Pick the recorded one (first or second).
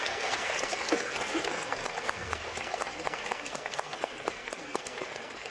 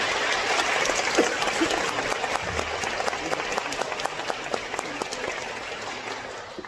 second